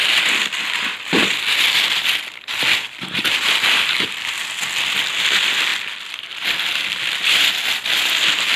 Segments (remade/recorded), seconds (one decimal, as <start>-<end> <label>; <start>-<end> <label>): 0.0-8.6 recorded